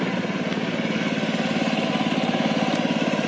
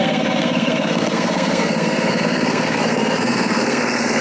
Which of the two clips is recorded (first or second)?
first